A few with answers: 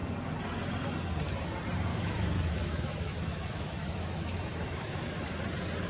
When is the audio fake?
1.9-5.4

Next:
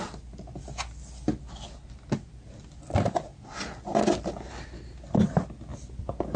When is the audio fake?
none

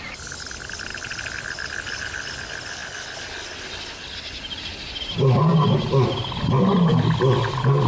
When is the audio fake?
none

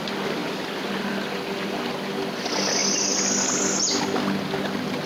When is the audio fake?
none

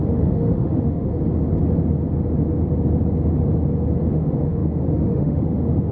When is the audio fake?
0.0-1.1; 4.1-5.9

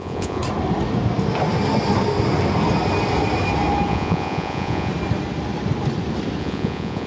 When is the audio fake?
0.0-0.4; 3.9-4.9; 6.4-7.1